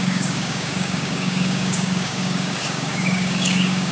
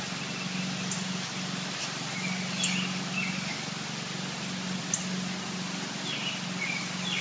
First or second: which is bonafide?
second